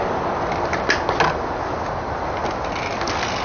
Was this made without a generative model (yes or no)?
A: yes